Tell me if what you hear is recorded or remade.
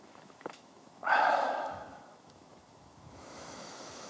remade